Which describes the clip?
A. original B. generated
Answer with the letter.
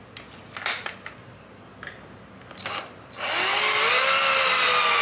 A